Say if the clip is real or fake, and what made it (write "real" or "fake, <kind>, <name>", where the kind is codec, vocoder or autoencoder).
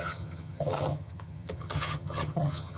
fake, vocoder, HiFi-GAN